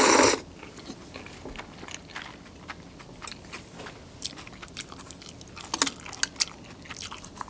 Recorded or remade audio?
recorded